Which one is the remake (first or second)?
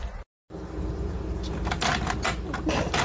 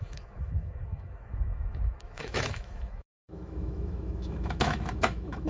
second